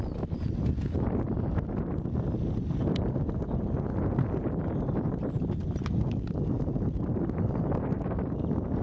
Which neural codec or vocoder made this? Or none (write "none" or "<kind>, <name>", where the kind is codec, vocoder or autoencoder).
none